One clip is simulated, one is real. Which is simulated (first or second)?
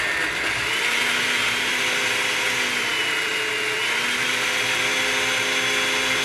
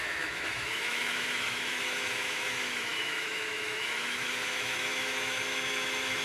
second